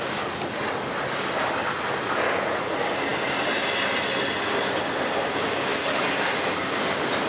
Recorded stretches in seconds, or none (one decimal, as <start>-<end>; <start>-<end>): 0.0-7.3